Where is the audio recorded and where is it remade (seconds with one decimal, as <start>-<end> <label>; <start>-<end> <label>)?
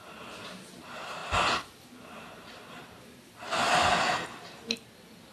0.0-5.3 recorded